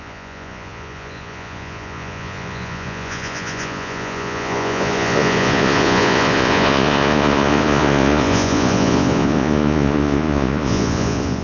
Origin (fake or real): fake